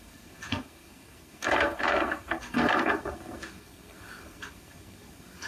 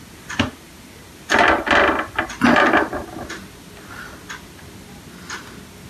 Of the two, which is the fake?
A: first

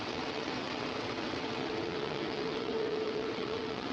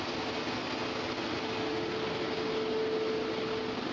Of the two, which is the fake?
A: first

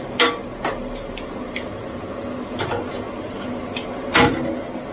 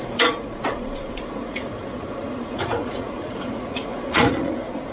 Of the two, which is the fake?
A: second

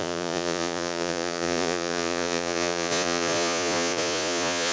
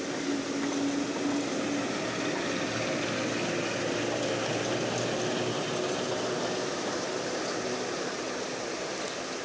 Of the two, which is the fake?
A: first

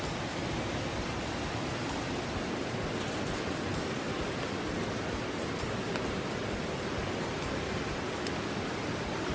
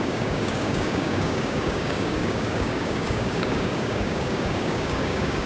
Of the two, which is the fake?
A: second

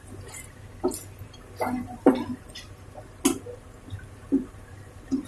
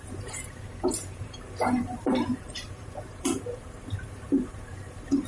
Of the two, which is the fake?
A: second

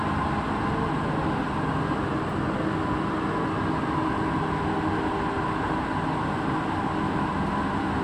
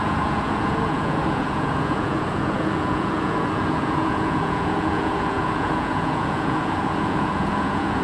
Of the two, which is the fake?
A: second